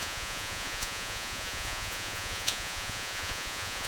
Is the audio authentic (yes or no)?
no